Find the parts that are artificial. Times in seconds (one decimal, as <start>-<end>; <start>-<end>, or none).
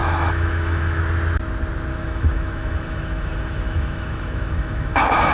0.0-1.0; 1.9-5.3